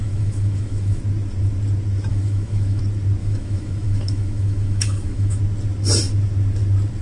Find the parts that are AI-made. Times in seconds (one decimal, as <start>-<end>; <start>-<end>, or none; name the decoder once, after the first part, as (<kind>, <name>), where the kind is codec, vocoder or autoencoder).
0.0-1.0 (autoencoder, DAC-VAE); 2.1-2.8; 3.2-5.4